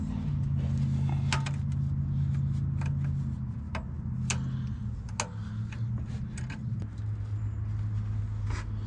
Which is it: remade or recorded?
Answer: recorded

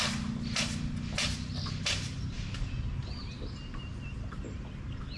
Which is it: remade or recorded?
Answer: recorded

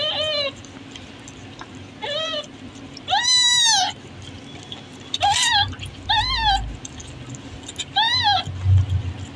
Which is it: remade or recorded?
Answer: recorded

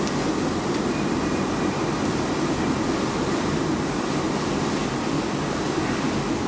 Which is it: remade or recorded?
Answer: recorded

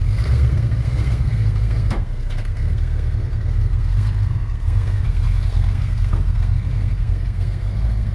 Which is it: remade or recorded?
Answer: remade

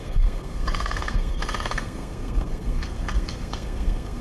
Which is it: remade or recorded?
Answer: remade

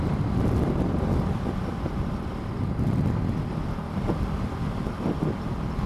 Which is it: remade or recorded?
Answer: recorded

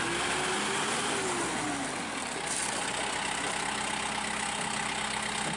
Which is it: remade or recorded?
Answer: recorded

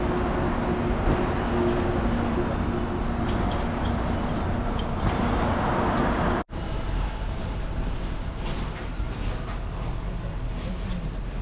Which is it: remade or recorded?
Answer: recorded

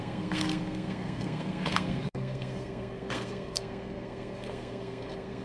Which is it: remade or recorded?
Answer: remade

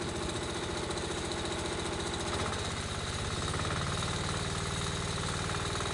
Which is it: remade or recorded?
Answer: recorded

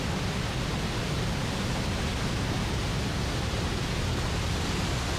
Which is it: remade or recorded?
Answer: recorded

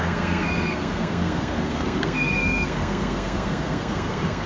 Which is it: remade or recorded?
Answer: remade